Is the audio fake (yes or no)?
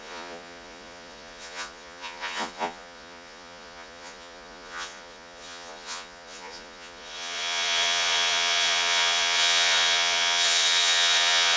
yes